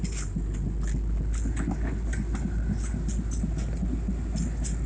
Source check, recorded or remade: recorded